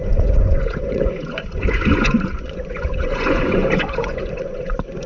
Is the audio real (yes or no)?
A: no